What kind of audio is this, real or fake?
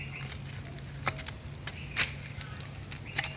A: real